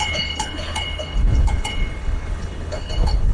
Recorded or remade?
remade